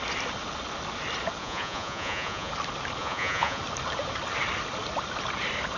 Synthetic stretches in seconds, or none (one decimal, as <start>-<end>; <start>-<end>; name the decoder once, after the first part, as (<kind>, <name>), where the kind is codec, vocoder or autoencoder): 1.4-2.5 (vocoder, Vocos); 3.0-3.6